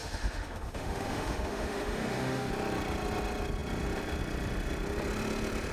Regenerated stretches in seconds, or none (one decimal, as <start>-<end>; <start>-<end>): 0.0-2.5